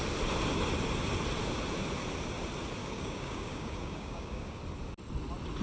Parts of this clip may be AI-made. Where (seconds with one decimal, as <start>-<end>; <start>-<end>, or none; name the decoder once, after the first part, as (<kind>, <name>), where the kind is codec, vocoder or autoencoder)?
2.8-4.6 (codec, DAC)